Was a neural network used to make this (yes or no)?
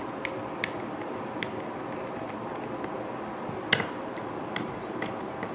no